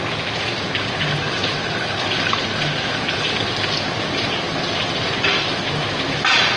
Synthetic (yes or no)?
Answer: no